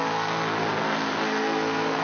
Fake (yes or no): yes